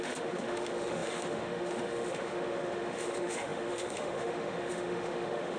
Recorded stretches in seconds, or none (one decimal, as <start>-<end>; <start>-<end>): none